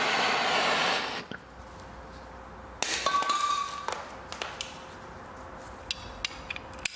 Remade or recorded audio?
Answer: recorded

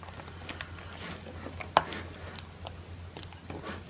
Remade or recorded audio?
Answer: recorded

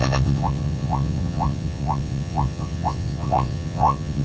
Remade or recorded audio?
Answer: remade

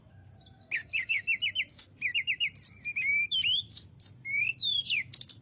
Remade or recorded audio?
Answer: recorded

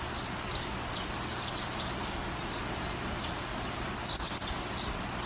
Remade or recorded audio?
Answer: recorded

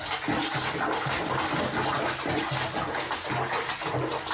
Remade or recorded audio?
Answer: recorded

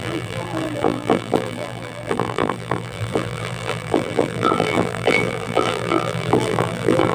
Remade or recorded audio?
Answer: remade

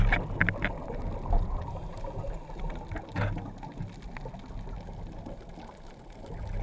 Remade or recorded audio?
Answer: recorded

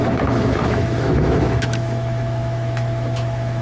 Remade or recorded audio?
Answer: remade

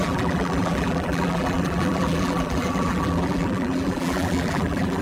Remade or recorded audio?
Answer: remade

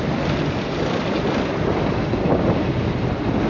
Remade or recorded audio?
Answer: recorded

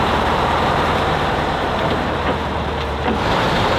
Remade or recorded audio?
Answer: remade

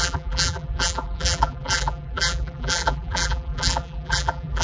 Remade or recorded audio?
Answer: remade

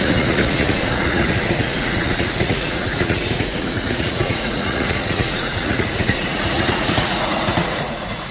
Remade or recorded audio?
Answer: remade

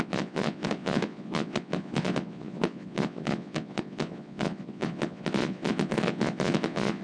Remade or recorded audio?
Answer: remade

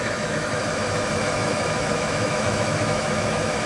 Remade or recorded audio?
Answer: remade